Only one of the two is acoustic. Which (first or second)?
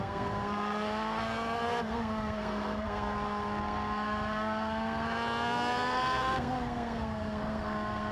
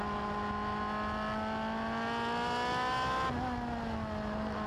second